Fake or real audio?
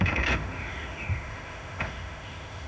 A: fake